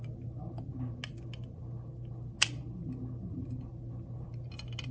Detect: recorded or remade recorded